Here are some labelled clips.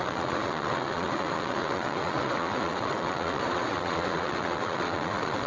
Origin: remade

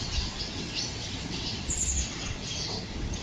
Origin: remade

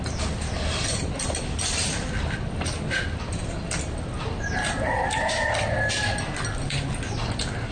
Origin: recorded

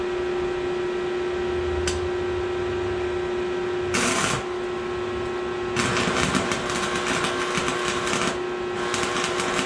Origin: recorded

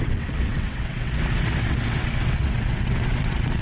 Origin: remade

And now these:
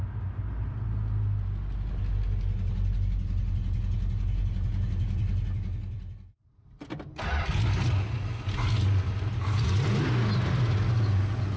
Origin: recorded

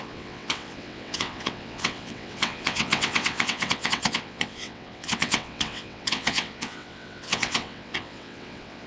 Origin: remade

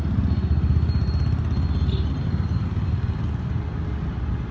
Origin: recorded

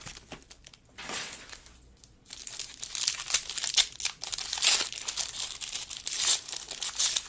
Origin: recorded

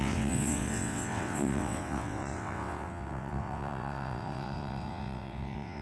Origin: remade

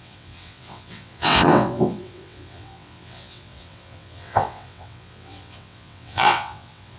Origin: remade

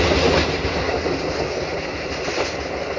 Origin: recorded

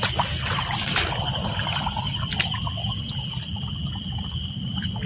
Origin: recorded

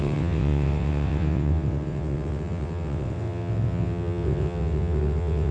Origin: remade